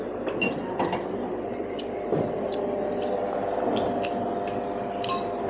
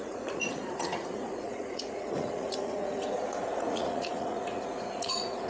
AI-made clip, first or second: second